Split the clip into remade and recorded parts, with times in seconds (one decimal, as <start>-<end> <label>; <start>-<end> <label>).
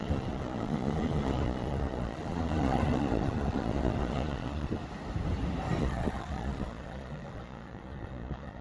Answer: 0.0-4.8 remade; 4.8-5.8 recorded; 5.8-8.6 remade